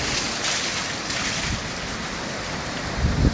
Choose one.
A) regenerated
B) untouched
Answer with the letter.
B